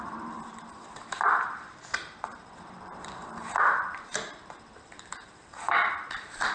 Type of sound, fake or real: fake